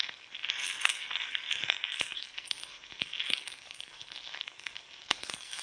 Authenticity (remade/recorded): remade